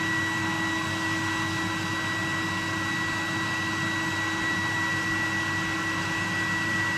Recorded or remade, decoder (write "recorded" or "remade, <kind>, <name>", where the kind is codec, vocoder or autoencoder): recorded